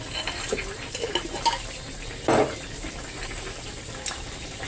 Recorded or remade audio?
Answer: recorded